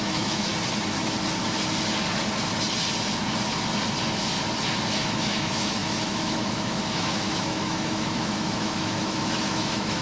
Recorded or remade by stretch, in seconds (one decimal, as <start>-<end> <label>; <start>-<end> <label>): 0.0-0.5 remade; 0.5-4.9 recorded; 4.9-10.0 remade